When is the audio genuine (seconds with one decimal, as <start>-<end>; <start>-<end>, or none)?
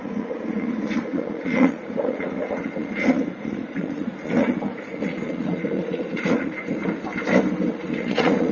6.8-7.7